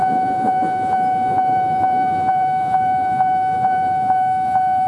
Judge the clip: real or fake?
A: fake